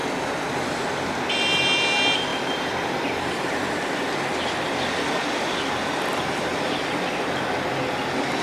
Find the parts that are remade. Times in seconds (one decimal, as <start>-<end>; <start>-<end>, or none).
2.3-7.0